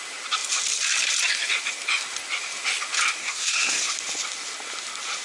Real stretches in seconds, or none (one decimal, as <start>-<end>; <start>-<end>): 0.0-3.2; 3.9-5.2